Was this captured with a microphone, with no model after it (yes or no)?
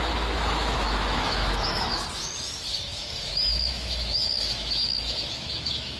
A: no